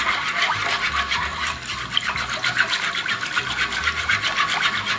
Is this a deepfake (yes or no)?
no